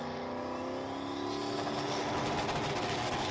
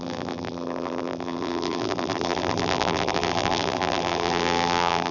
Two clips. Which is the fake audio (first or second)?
second